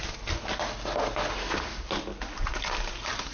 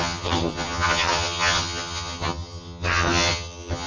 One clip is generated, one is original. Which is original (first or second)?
first